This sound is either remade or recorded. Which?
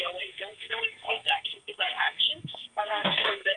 remade